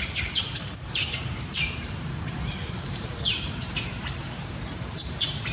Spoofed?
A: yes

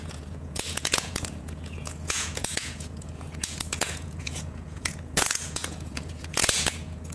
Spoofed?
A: yes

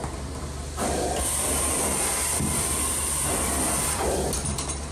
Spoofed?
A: yes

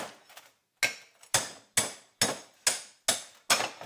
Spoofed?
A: no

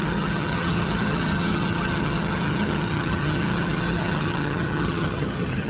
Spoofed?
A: yes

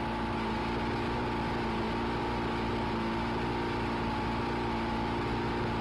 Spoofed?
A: no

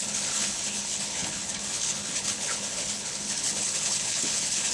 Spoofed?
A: yes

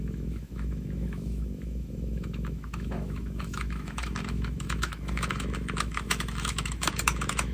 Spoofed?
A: yes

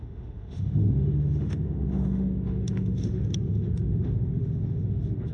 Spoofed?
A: yes